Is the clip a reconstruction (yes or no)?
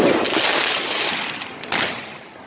no